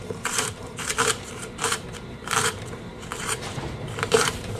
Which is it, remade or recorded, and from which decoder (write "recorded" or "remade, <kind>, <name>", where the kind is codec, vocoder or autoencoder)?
remade, vocoder, BigVGAN v2